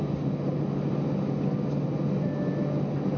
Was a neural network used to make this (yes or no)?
no